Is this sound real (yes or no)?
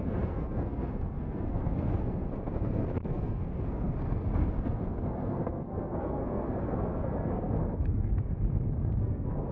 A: no